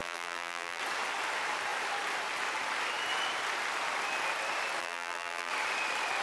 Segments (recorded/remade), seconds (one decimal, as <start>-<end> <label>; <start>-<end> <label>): 0.0-0.8 remade; 0.8-4.8 recorded; 4.8-5.5 remade; 5.5-6.2 recorded